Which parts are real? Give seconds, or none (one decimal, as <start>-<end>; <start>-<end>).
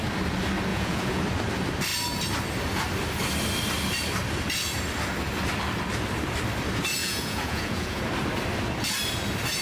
0.0-0.7; 1.2-7.0; 8.0-9.6